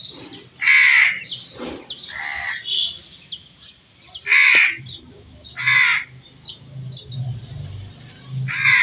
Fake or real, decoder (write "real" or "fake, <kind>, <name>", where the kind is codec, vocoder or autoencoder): real